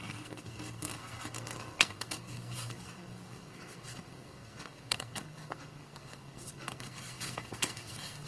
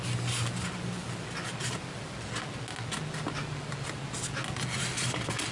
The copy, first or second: first